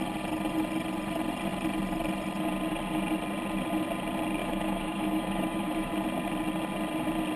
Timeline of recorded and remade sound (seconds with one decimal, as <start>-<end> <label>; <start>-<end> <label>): 0.0-4.4 recorded; 4.4-5.9 remade; 5.9-7.4 recorded

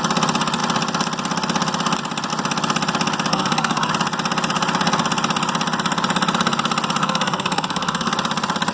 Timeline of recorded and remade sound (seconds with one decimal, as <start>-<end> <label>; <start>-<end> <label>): 0.0-3.3 recorded; 3.3-3.9 remade; 3.9-7.0 recorded; 7.0-8.1 remade; 8.1-8.7 recorded

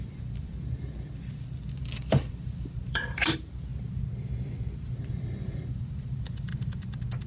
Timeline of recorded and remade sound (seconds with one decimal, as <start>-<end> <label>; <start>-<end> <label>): 0.0-3.7 remade; 3.7-4.8 recorded; 4.8-6.5 remade; 6.5-7.3 recorded

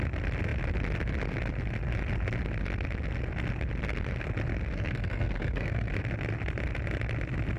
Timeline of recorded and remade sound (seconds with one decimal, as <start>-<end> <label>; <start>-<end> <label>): 0.0-4.7 recorded; 4.7-5.9 remade; 5.9-7.6 recorded

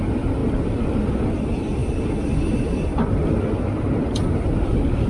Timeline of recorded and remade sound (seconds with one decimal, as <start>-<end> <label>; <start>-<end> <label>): 0.0-5.1 recorded

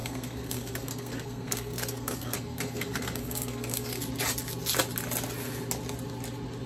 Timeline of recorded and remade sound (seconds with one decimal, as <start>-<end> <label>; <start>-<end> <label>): 0.0-4.0 remade; 4.0-6.7 recorded

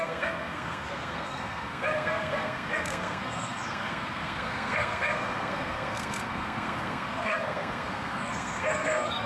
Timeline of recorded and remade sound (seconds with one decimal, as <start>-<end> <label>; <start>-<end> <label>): 0.0-9.3 remade

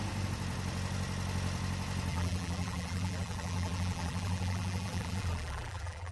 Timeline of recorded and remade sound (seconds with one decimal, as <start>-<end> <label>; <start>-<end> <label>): 0.0-2.1 recorded; 2.1-6.1 remade